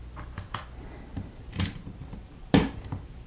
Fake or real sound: fake